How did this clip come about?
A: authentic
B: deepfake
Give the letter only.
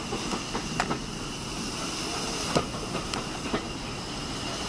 A